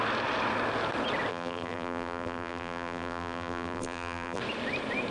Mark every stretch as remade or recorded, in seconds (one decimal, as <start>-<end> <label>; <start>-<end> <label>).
0.0-1.3 recorded; 1.3-4.4 remade; 4.4-5.1 recorded

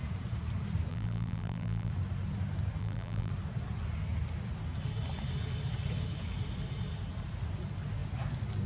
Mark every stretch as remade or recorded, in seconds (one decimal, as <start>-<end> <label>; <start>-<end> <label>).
0.0-0.9 recorded; 0.9-1.9 remade; 1.9-2.8 recorded; 2.8-3.3 remade; 3.3-8.7 recorded